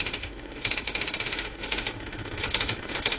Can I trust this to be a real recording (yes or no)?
no